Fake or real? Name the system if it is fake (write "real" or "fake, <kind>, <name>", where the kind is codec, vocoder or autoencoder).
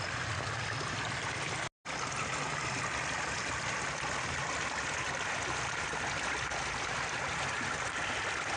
real